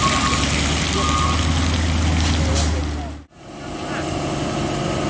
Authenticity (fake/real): real